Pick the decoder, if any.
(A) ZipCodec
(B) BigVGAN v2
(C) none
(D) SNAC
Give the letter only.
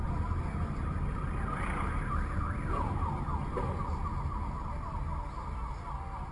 C